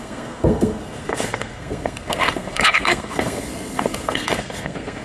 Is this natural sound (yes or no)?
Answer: no